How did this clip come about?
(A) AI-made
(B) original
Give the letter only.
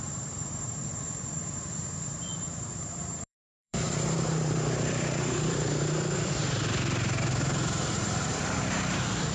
A